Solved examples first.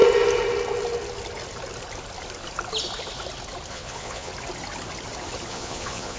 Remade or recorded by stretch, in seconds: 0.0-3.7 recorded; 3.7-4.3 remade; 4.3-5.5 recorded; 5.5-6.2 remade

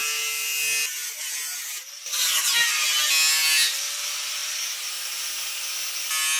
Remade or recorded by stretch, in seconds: 0.0-6.4 recorded

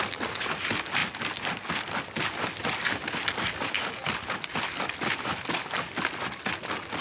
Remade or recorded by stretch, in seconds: 0.0-7.0 recorded

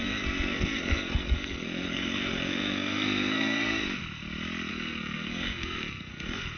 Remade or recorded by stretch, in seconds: 0.0-4.0 remade; 4.0-4.7 recorded; 4.7-6.6 remade

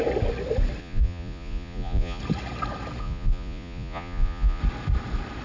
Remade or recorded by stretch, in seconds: 0.0-0.8 recorded; 0.8-2.2 remade; 2.2-3.0 recorded; 3.0-4.6 remade; 4.6-5.4 recorded

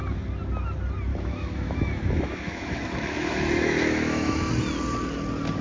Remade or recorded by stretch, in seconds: 0.0-1.1 recorded; 1.1-4.5 remade; 4.5-5.6 recorded

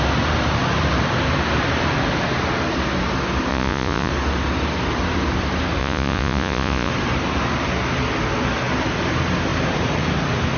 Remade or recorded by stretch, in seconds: 0.0-3.5 recorded; 3.5-4.1 remade; 4.1-5.8 recorded; 5.8-6.9 remade; 6.9-10.6 recorded